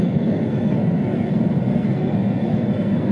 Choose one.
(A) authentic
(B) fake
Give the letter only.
B